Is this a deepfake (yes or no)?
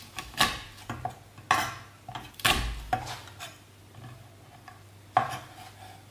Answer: no